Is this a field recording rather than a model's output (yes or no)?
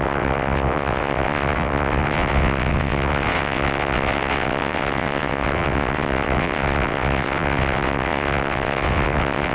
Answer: no